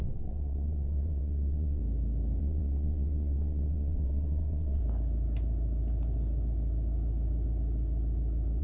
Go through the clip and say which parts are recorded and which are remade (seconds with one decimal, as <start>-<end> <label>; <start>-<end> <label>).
0.0-1.8 remade; 1.8-2.4 recorded; 2.4-4.8 remade; 4.8-8.6 recorded